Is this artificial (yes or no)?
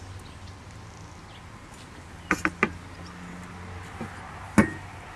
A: no